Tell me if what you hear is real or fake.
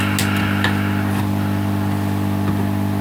real